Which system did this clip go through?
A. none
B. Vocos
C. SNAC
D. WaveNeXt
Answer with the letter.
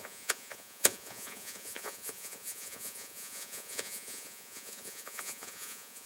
B